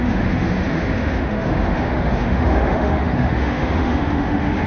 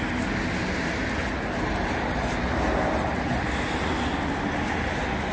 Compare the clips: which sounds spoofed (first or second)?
first